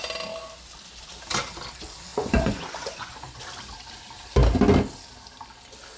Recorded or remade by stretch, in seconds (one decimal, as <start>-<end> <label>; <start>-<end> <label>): 0.0-2.1 recorded; 2.1-3.4 remade; 3.4-6.0 recorded